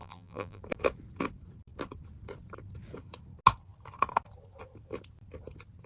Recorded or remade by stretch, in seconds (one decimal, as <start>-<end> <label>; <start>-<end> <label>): 0.0-0.6 remade; 0.6-5.9 recorded